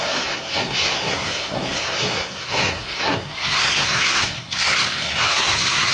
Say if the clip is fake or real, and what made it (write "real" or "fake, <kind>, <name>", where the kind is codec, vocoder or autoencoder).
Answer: fake, codec, SNAC